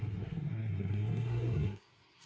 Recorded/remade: remade